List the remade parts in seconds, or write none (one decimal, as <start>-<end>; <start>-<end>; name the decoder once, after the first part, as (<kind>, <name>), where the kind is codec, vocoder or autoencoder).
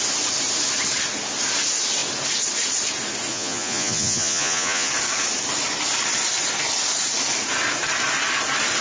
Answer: 3.3-4.9 (vocoder, Vocos)